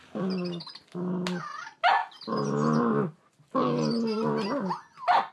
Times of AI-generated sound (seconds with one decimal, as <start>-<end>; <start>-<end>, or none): none